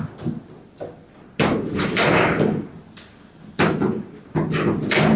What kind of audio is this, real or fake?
real